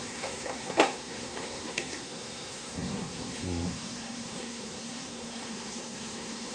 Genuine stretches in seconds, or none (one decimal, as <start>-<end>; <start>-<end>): none